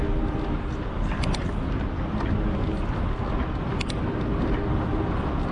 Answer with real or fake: real